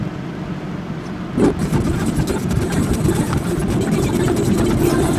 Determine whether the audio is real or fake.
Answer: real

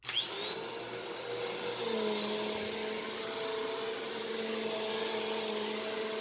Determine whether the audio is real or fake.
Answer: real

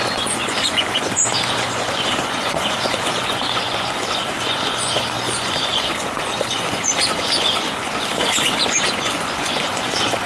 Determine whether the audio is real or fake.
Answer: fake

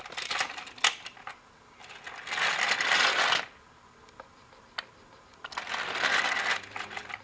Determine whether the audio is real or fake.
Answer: real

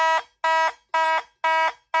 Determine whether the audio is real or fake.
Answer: real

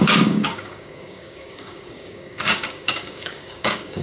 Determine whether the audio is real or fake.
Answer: fake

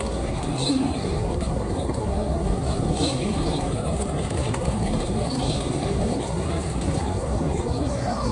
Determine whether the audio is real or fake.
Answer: fake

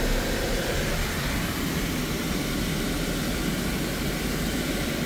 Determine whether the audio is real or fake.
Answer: real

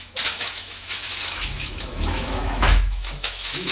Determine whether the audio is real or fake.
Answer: fake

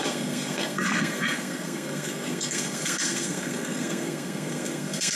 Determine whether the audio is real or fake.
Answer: fake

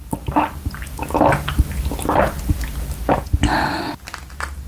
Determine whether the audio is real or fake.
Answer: real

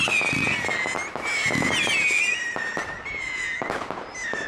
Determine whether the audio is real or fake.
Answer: real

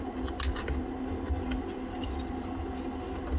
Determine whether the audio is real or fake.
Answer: real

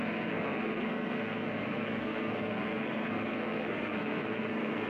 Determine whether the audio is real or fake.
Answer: fake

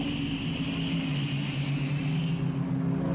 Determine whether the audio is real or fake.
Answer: real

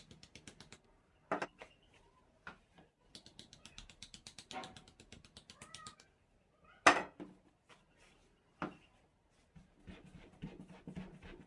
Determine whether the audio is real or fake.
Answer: real